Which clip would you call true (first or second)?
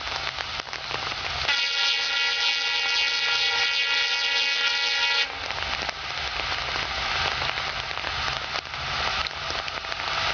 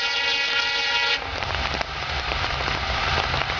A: first